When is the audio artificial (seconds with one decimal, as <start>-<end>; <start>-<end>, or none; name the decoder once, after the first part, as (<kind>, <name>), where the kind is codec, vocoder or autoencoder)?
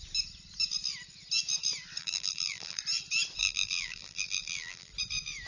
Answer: 2.0-2.8 (vocoder, BigVGAN v2); 3.4-4.9